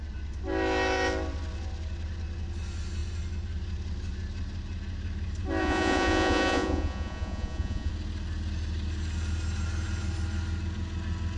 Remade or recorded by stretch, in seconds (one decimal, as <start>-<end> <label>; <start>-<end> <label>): 0.0-5.6 recorded; 5.6-7.9 remade; 7.9-11.4 recorded